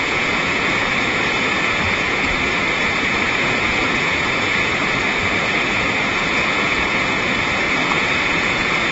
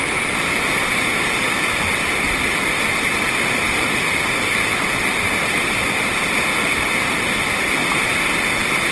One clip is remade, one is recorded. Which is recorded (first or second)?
second